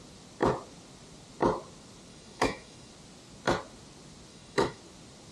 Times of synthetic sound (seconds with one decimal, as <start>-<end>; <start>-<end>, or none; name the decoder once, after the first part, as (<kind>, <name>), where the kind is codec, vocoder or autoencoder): 2.1-2.9 (autoencoder, DAC-VAE); 4.3-4.8